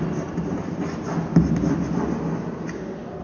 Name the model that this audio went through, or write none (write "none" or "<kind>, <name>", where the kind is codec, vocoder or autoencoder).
none